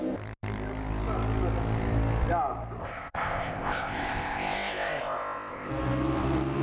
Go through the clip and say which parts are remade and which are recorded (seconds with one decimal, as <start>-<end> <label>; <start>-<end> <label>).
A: 0.0-2.8 recorded; 2.8-5.7 remade; 5.7-6.6 recorded